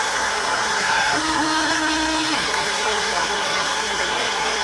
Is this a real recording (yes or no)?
no